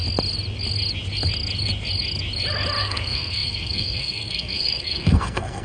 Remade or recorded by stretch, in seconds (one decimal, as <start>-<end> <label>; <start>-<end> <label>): 0.0-2.8 recorded; 2.8-5.6 remade